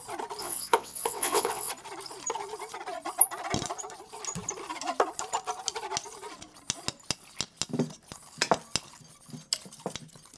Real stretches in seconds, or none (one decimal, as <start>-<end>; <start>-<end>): 0.0-0.4; 1.7-10.4